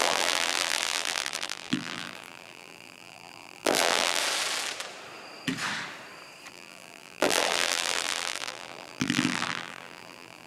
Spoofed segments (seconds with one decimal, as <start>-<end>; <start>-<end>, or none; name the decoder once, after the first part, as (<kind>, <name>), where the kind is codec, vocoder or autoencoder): 0.0-4.2 (vocoder, BigVGAN v2); 6.5-10.5